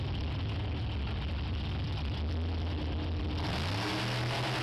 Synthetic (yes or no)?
no